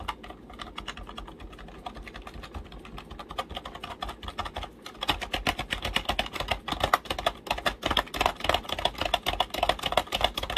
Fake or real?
real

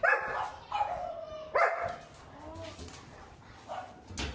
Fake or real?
real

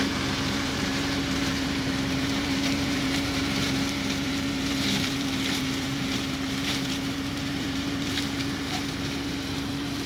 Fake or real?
fake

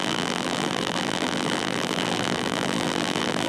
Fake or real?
fake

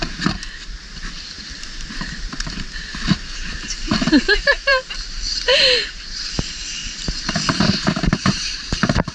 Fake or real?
fake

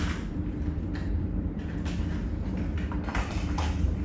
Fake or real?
fake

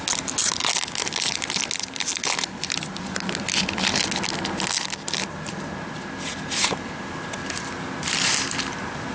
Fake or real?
real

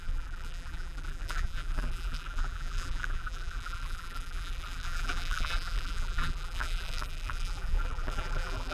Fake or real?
fake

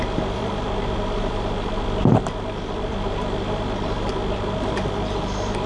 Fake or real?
fake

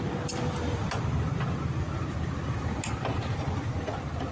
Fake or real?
real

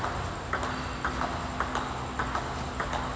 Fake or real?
real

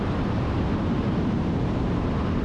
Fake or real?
fake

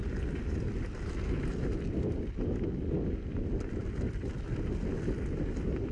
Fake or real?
real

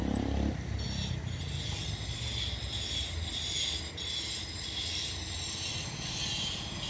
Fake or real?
real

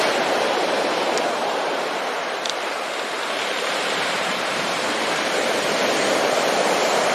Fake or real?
fake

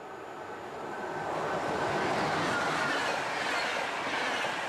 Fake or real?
real